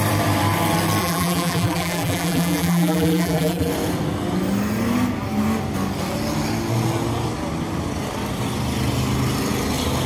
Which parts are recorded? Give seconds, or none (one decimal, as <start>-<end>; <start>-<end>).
0.0-1.0; 3.7-10.1